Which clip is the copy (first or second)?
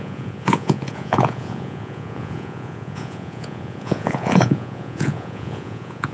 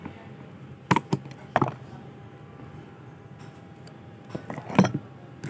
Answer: first